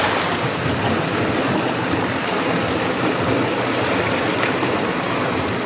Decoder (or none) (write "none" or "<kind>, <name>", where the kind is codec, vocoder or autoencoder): none